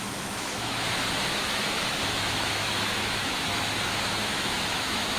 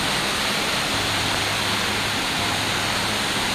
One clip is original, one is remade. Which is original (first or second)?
second